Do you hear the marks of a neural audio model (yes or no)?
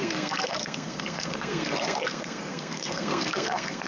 yes